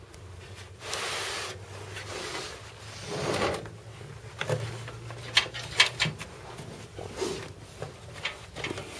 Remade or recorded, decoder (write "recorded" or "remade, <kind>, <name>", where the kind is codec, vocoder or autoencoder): recorded